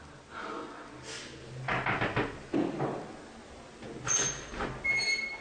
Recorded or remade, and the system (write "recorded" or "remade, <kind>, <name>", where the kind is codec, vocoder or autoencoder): recorded